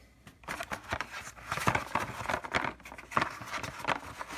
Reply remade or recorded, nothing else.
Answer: recorded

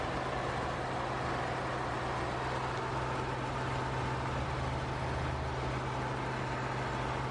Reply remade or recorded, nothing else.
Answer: recorded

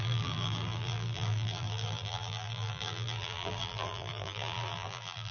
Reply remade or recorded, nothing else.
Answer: remade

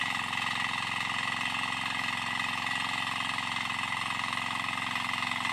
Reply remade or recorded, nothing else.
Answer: recorded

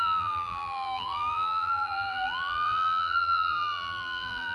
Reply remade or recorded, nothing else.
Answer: remade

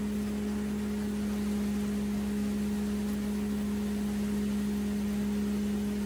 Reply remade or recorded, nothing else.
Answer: recorded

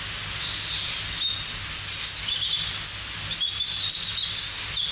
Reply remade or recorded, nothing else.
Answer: recorded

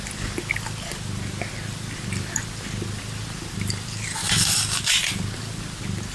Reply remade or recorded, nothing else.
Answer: recorded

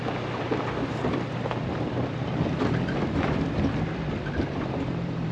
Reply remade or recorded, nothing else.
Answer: remade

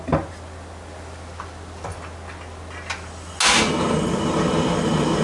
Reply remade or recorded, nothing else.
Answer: recorded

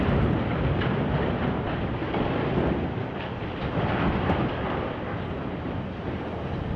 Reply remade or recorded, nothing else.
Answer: recorded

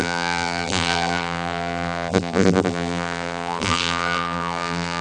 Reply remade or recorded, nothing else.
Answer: remade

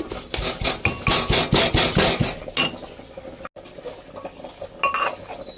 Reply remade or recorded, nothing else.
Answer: recorded